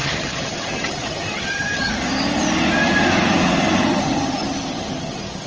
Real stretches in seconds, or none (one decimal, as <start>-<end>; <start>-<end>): 1.9-3.8